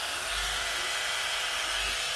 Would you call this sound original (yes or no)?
yes